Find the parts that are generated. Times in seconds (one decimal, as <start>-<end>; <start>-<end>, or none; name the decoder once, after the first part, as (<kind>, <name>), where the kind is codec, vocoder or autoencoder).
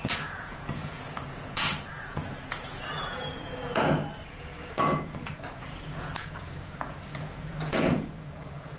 0.0-8.8 (vocoder, Vocos)